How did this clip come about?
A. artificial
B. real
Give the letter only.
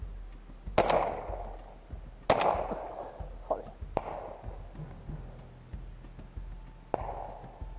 B